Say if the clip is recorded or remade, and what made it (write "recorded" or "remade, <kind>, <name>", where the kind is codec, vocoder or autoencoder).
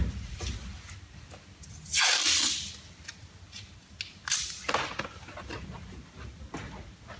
recorded